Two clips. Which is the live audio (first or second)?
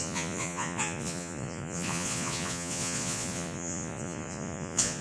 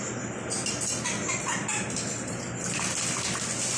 second